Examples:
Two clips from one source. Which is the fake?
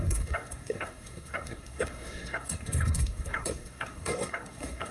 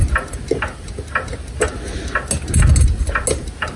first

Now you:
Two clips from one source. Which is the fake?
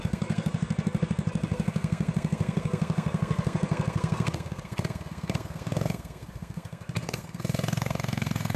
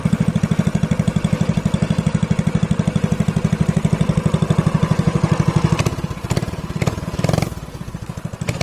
first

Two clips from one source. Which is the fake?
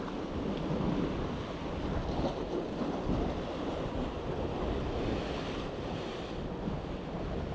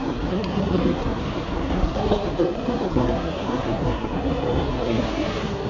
second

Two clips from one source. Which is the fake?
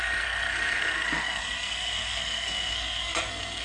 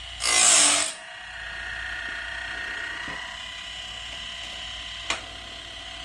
first